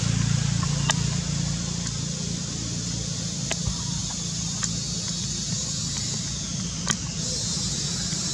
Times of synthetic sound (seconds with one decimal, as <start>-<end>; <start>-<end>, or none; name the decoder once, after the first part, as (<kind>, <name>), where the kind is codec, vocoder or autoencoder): none